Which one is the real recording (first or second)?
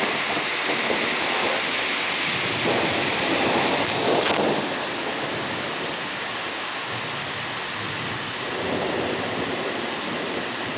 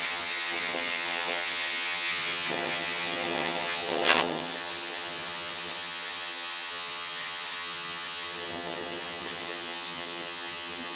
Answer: first